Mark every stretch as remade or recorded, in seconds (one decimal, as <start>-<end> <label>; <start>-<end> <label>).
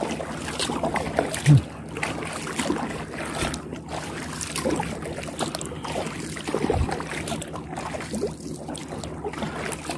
0.0-3.7 recorded; 3.7-8.4 remade; 8.4-10.0 recorded